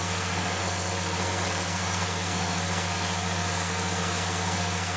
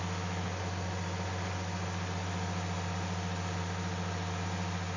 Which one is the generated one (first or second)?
first